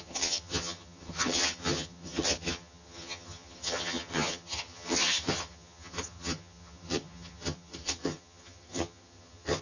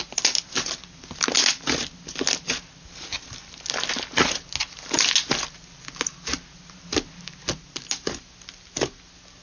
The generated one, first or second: first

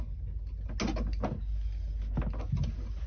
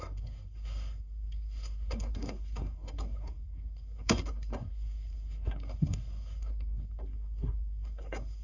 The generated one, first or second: second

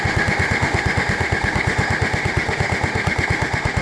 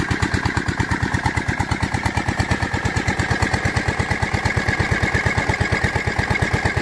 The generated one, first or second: first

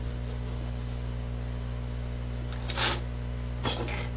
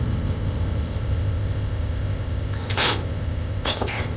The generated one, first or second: second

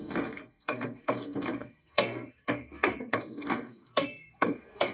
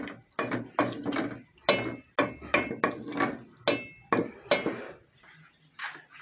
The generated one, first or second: first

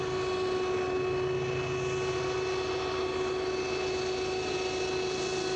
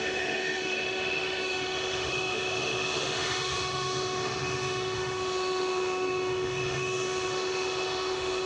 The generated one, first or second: second